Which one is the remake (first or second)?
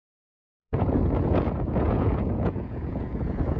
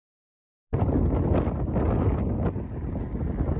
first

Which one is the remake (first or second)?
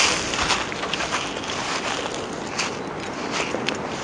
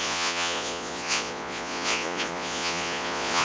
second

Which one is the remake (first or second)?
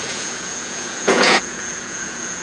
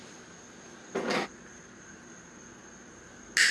first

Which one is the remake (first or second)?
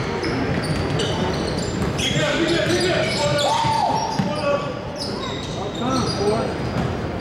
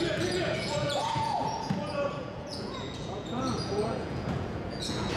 second